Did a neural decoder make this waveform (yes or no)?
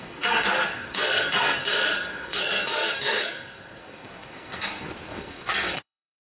yes